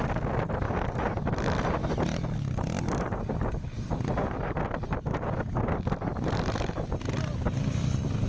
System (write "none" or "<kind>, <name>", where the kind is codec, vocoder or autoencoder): none